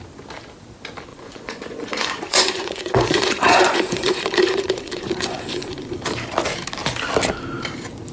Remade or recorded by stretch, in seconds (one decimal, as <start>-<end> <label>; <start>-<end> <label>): 0.0-1.1 recorded; 1.1-6.0 remade; 6.0-8.1 recorded

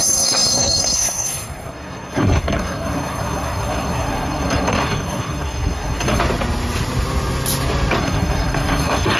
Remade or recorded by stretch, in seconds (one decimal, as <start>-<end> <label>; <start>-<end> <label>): 0.0-6.2 remade; 6.2-8.0 recorded; 8.0-9.2 remade

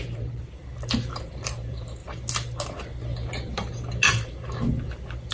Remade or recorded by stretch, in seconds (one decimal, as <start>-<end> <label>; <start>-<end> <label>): 0.0-0.6 remade; 0.6-1.2 recorded; 1.2-2.0 remade; 2.0-5.3 recorded